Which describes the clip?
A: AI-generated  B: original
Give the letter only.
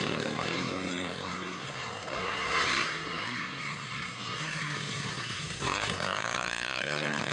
A